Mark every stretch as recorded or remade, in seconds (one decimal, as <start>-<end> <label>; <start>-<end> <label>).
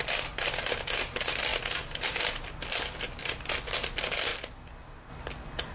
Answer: 0.0-5.7 recorded